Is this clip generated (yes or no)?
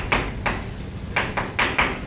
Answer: no